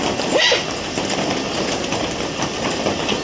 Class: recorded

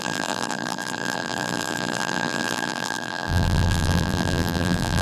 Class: remade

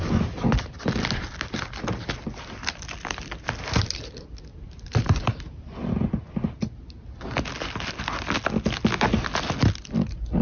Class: recorded